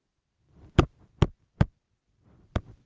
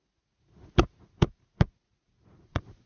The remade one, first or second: second